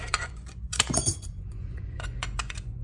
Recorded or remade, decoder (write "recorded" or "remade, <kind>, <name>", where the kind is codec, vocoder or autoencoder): remade, vocoder, Vocos